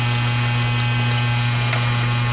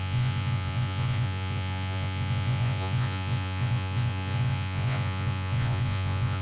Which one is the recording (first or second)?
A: first